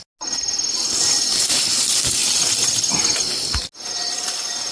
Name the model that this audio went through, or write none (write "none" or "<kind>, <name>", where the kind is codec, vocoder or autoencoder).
none